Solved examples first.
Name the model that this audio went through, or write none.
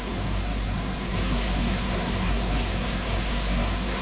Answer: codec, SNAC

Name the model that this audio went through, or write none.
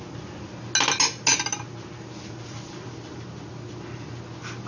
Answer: none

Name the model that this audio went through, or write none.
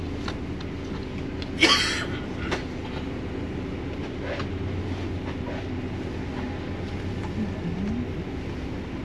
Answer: none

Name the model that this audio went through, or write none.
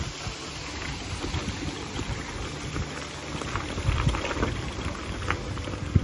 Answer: none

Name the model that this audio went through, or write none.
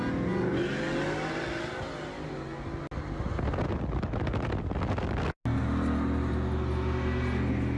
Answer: none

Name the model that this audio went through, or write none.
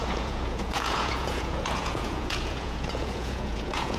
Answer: vocoder, Vocos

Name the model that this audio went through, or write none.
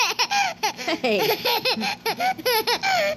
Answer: none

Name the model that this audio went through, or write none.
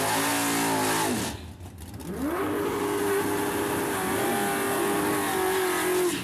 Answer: none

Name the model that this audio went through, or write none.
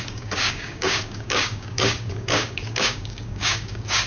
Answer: codec, DAC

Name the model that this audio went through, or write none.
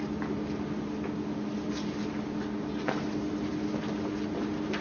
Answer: none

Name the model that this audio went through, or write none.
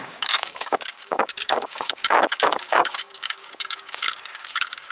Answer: codec, DAC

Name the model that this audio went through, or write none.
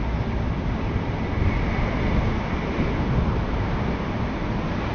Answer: none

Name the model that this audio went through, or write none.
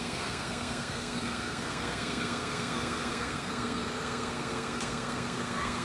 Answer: codec, SNAC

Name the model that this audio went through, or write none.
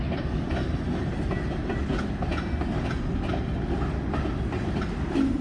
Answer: none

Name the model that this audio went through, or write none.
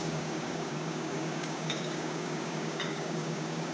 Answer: codec, DAC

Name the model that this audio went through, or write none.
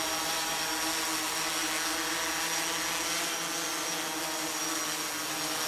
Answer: none